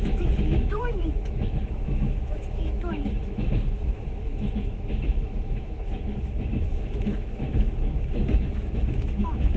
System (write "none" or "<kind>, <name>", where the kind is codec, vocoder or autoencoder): autoencoder, DAC-VAE